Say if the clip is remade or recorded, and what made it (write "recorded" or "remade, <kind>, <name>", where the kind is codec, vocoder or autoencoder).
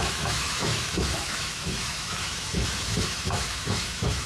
remade, autoencoder, DAC-VAE